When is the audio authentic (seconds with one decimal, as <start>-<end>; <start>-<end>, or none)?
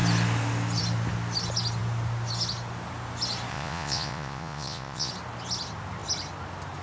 0.0-3.5; 5.1-6.8